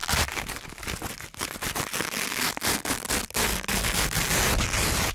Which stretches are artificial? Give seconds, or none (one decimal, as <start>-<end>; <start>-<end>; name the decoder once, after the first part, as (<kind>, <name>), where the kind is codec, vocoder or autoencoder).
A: none